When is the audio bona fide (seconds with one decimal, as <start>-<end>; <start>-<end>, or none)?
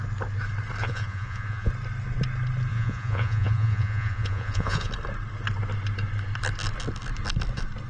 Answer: 0.0-0.8; 1.7-2.7; 4.9-7.9